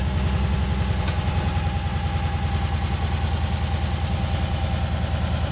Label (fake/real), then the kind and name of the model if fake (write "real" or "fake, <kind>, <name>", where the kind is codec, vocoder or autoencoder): real